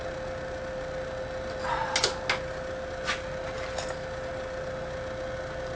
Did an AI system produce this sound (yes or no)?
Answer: no